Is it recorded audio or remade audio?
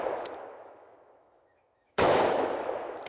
remade